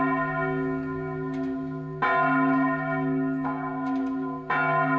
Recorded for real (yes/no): yes